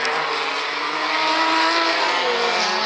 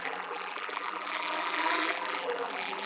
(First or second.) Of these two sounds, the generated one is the second